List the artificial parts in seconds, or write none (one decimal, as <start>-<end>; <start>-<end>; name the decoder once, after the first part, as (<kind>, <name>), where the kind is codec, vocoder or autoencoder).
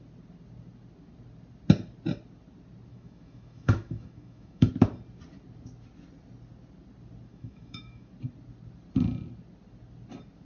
2.9-4.7 (autoencoder, DAC-VAE); 7.3-8.1